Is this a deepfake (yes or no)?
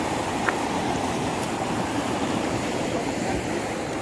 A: yes